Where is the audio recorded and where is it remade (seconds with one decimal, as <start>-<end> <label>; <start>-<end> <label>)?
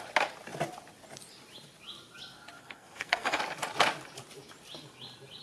0.0-2.6 recorded; 2.6-3.4 remade; 3.4-5.4 recorded